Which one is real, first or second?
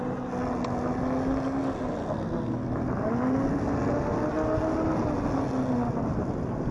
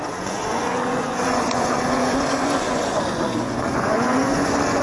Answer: first